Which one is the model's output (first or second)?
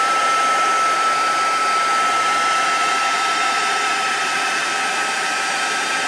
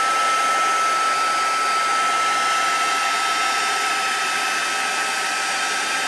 first